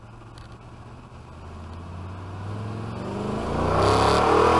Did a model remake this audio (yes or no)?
no